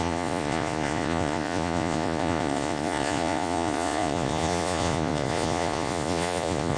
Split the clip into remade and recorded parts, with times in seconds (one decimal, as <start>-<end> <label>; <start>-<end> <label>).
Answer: 0.0-6.8 remade